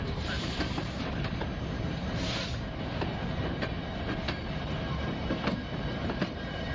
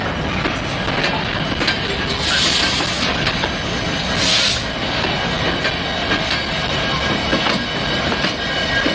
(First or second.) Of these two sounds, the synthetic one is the first